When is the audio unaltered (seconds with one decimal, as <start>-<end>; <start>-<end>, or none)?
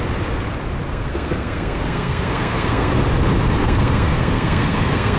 0.0-0.9; 2.9-3.6